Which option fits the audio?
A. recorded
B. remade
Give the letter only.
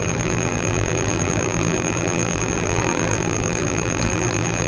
B